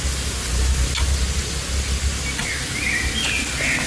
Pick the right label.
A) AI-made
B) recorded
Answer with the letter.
B